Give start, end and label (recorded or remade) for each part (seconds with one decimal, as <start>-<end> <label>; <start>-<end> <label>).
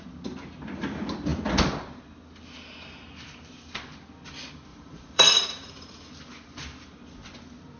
0.0-4.7 recorded; 4.7-6.1 remade; 6.1-7.8 recorded